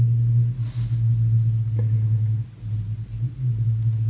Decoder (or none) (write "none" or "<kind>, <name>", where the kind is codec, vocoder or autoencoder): none